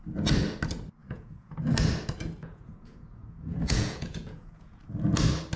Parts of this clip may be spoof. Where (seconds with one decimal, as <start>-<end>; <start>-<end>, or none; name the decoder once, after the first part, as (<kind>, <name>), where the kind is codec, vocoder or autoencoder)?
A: 1.0-1.6 (vocoder, Vocos); 2.4-4.8

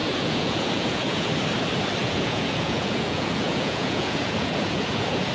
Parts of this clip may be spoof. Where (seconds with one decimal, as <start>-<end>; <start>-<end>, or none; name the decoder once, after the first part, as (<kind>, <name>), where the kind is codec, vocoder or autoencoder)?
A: 0.0-1.3 (vocoder, Vocos); 2.0-5.3

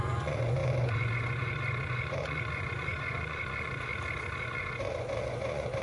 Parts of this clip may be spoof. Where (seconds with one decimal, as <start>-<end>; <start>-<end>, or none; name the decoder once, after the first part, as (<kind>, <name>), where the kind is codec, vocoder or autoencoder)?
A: 0.0-3.9 (vocoder, Vocos); 4.4-5.8

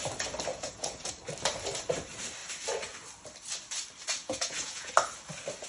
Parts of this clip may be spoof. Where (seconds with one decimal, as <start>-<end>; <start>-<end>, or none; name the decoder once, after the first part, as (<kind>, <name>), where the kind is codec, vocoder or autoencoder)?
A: 0.5-1.1 (vocoder, Vocos); 4.2-4.9